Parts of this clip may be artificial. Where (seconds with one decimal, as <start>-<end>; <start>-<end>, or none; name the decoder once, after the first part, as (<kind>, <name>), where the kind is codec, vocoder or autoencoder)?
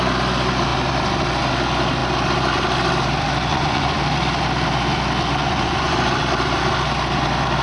3.5-4.0 (vocoder, Vocos); 5.4-6.2